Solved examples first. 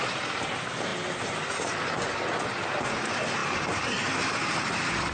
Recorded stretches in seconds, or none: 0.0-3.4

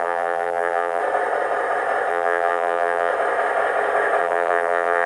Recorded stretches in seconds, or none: 1.0-2.1; 3.1-4.2

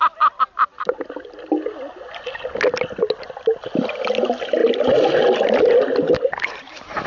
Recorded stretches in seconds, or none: 0.0-7.1

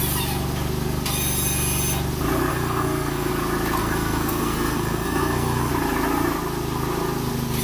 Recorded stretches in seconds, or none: 0.0-2.5; 3.3-3.8; 5.7-7.6

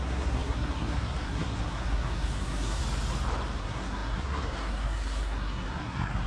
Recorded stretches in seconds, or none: 2.8-3.6